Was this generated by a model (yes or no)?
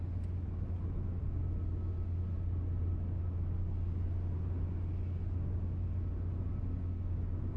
no